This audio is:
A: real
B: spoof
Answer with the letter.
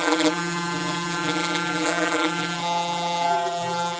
B